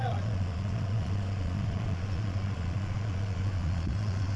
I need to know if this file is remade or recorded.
remade